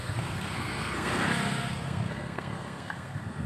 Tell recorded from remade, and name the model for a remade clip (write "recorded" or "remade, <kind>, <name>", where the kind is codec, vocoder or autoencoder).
remade, codec, SNAC